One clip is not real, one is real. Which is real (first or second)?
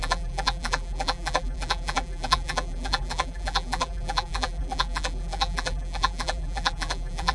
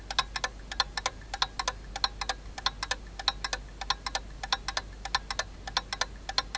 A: second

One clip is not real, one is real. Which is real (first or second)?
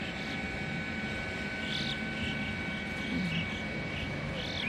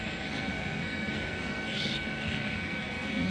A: first